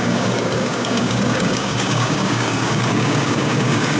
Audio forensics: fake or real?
fake